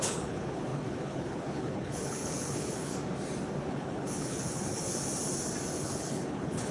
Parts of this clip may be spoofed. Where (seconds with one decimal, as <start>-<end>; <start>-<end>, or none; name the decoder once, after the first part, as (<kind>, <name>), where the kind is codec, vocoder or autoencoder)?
0.0-2.9 (codec, HILCodec); 3.6-4.8; 5.8-6.7